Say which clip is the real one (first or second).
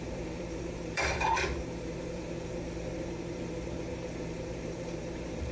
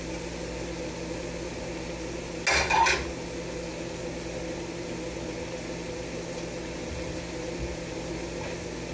second